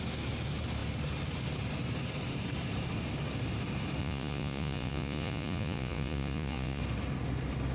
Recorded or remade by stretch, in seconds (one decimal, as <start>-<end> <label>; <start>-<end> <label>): 0.0-4.0 recorded; 4.0-6.8 remade; 6.8-7.7 recorded